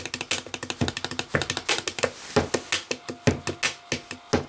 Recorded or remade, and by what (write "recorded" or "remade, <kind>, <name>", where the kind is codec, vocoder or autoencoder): recorded